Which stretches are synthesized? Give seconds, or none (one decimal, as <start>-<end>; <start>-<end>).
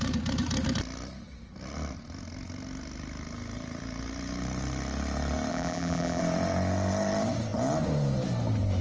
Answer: 5.5-6.2